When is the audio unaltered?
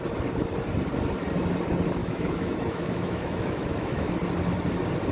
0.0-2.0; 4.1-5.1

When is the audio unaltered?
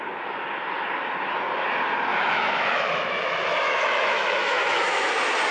0.0-2.1; 5.1-5.5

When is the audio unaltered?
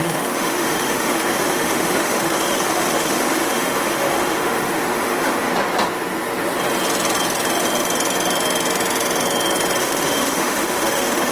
5.5-9.8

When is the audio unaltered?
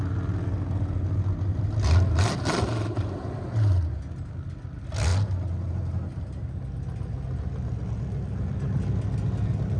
0.0-9.8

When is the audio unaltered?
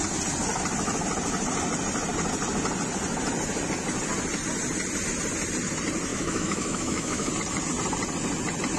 0.0-6.1; 7.3-8.8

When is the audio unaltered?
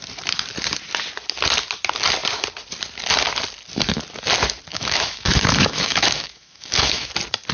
0.0-4.7; 7.1-7.5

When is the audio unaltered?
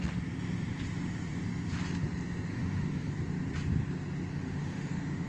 0.0-2.5; 3.1-4.3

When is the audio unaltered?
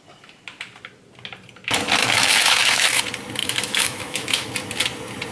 0.0-2.0; 3.0-3.4; 4.5-5.3